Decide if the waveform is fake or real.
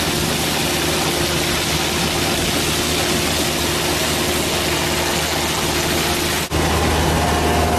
real